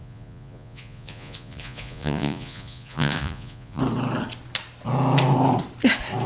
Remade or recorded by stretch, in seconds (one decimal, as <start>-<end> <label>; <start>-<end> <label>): 0.0-3.8 remade; 3.8-6.3 recorded